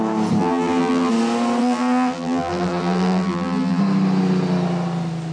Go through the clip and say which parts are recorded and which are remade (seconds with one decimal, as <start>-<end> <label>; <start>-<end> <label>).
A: 0.0-0.4 recorded; 0.4-1.1 remade; 1.1-1.6 recorded; 1.6-3.8 remade; 3.8-5.3 recorded